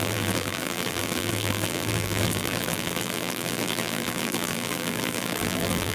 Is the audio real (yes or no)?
no